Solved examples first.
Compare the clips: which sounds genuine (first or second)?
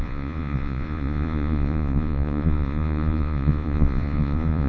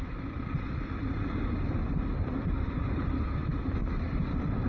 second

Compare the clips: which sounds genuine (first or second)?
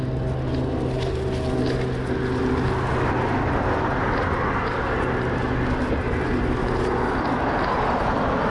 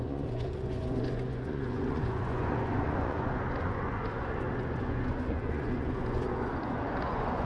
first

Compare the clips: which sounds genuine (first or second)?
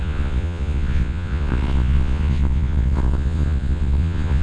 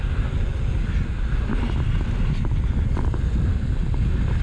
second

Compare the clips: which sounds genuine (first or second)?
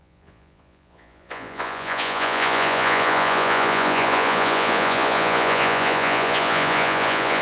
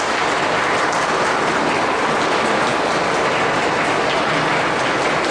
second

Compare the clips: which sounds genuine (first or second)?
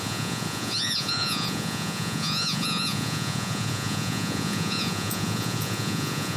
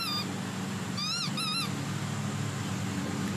second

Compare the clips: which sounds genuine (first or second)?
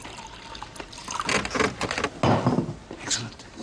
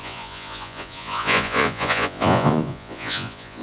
first